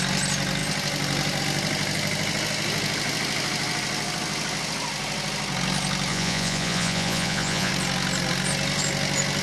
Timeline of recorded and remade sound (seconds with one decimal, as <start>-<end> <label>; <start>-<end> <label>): 0.0-6.1 recorded; 6.1-7.7 remade; 7.7-9.4 recorded